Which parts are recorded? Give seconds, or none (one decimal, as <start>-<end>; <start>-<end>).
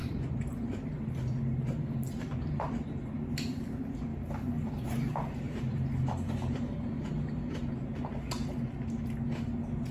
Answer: 2.7-4.1; 7.7-9.9